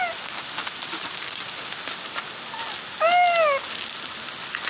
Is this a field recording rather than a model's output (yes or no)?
yes